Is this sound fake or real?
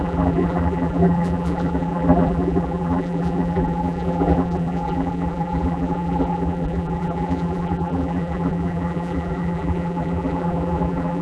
fake